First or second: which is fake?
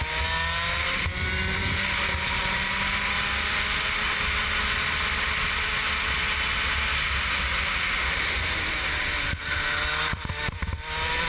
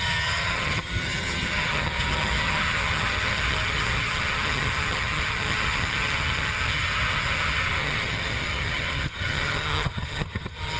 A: second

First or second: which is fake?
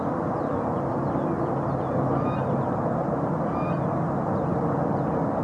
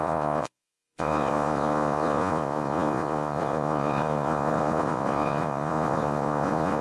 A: second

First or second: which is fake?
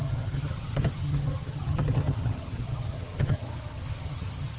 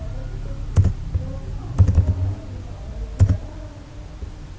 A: first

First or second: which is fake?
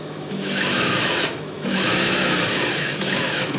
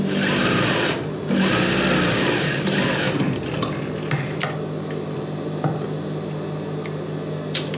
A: first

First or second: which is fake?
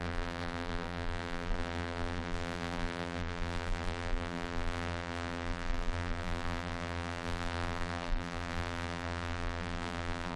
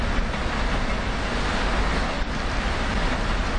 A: first